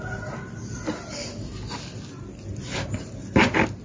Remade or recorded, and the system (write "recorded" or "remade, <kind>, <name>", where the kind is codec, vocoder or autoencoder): recorded